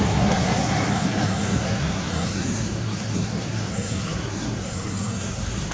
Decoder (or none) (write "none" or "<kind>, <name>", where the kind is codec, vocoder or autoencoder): codec, SNAC